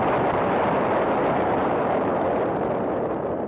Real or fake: real